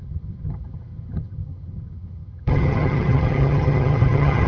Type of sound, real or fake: fake